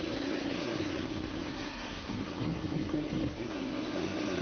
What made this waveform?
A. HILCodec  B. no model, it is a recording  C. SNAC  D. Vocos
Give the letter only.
C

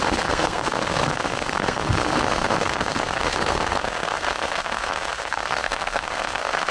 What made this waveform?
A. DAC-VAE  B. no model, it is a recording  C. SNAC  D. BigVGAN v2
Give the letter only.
C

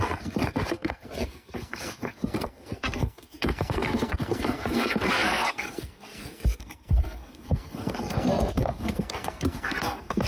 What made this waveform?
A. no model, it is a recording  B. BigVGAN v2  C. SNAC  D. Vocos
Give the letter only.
C